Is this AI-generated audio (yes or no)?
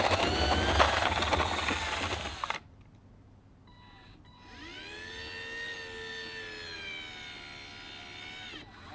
no